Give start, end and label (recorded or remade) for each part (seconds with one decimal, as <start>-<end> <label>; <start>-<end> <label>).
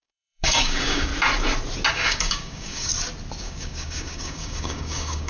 0.0-1.1 remade; 1.1-1.9 recorded; 1.9-2.9 remade; 2.9-3.4 recorded; 3.4-5.3 remade